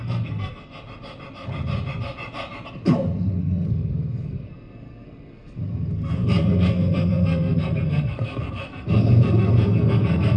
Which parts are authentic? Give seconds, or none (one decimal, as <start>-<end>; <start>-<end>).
0.7-3.4